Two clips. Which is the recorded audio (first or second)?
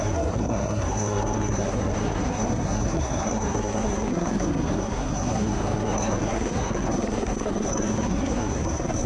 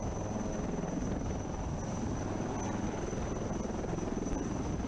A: second